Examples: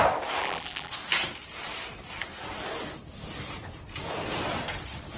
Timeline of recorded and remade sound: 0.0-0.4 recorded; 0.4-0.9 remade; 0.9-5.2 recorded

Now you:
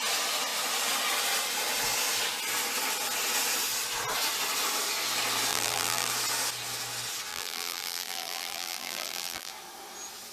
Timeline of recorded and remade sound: 0.0-5.5 recorded; 5.5-6.1 remade; 6.1-7.3 recorded; 7.3-9.5 remade; 9.5-10.3 recorded

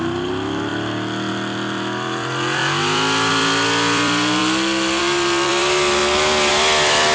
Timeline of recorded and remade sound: 0.0-0.7 remade; 0.7-1.3 recorded; 1.3-4.4 remade; 4.4-5.0 recorded; 5.0-6.0 remade; 6.0-6.5 recorded; 6.5-7.1 remade

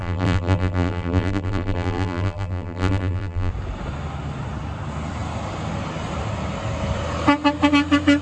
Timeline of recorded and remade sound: 0.0-3.5 remade; 3.5-8.2 recorded

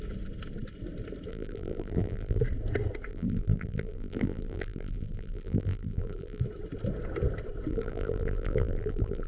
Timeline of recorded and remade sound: 0.0-1.3 recorded; 1.3-2.4 remade; 2.4-3.1 recorded; 3.1-6.4 remade; 6.4-7.7 recorded; 7.7-9.3 remade